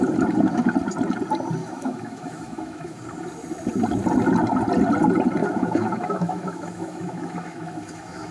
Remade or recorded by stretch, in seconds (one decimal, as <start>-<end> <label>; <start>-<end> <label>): 0.0-1.6 recorded; 1.6-3.0 remade; 3.0-5.4 recorded; 5.4-8.3 remade